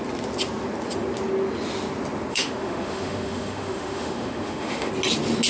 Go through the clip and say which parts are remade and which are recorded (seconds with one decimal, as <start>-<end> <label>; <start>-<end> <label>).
0.0-2.3 recorded; 2.3-4.9 remade; 4.9-5.5 recorded